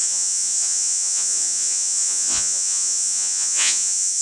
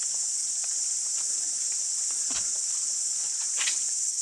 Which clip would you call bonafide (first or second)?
second